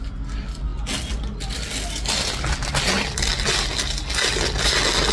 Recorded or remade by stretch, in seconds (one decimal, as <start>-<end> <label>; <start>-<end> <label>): 0.0-5.1 recorded